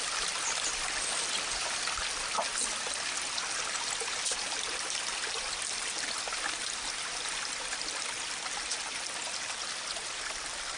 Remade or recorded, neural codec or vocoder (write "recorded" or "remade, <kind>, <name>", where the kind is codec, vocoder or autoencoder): recorded